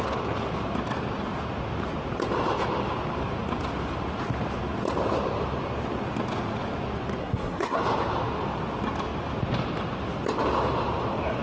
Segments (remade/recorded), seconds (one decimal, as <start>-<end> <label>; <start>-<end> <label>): 0.0-7.2 recorded; 7.2-7.8 remade; 7.8-11.4 recorded